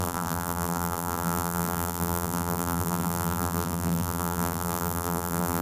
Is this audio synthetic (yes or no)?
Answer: yes